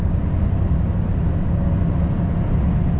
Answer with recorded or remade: recorded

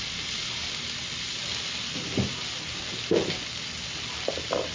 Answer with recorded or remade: recorded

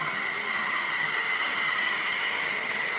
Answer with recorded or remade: remade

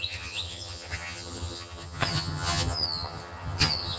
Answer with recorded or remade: remade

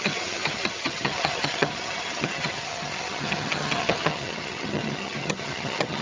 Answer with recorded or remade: remade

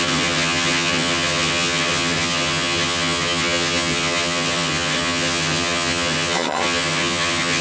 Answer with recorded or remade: remade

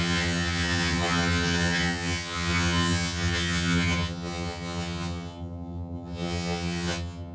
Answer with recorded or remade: remade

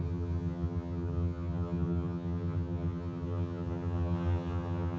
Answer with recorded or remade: remade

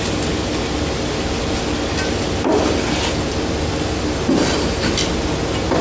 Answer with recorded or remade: recorded